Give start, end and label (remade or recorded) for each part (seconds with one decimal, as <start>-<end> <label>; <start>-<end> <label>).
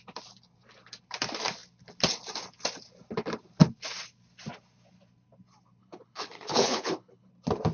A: 0.0-5.8 recorded; 5.8-7.3 remade; 7.3-7.7 recorded